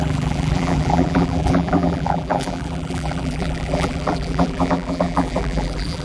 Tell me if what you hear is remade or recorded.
remade